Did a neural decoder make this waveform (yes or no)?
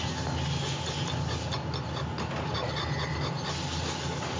no